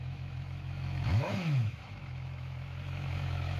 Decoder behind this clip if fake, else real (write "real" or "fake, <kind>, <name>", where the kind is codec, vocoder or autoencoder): fake, autoencoder, DAC-VAE